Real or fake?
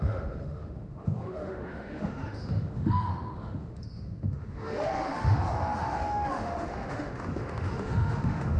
fake